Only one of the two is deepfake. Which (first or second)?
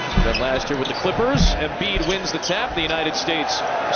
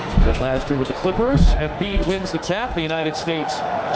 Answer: second